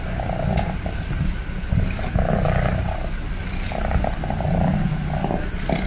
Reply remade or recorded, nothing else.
recorded